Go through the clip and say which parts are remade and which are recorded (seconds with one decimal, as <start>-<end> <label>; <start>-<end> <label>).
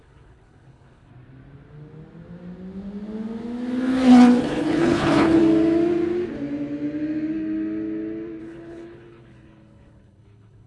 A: 0.0-1.1 remade; 1.1-4.4 recorded; 4.4-5.4 remade; 5.4-8.4 recorded; 8.4-10.7 remade